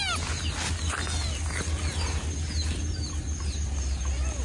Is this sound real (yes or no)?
yes